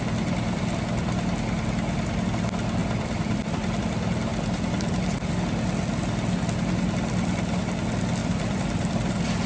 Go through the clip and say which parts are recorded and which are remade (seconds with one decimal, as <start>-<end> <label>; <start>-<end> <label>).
0.0-2.8 recorded; 2.8-3.8 remade; 3.8-4.3 recorded; 4.3-5.3 remade; 5.3-8.2 recorded; 8.2-9.5 remade